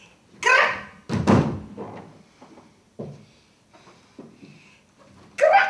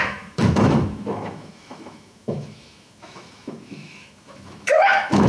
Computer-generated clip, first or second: second